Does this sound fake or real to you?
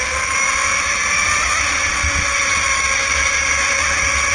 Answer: real